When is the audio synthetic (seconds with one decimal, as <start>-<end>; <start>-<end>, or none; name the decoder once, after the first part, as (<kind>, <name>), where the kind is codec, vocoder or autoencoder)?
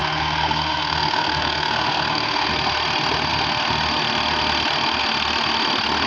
0.0-2.5 (codec, SNAC)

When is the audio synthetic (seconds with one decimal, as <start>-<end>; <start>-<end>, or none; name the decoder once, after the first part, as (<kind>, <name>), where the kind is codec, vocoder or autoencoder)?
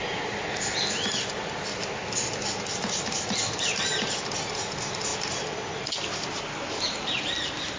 none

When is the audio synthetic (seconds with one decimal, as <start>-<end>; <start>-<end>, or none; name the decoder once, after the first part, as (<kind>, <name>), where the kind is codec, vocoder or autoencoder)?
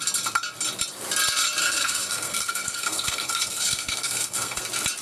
1.6-4.6 (codec, SNAC)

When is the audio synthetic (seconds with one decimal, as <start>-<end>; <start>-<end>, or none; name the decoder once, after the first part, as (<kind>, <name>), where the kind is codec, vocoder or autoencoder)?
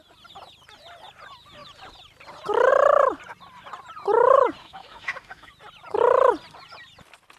4.6-5.5 (autoencoder, DAC-VAE)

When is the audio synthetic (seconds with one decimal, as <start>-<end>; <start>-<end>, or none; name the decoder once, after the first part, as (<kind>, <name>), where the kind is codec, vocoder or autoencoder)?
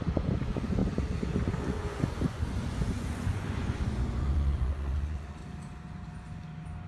0.0-5.4 (vocoder, Vocos)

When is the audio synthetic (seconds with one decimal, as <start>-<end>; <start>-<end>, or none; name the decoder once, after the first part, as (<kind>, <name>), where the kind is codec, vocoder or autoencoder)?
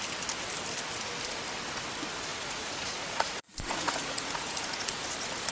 2.3-5.0 (vocoder, Vocos)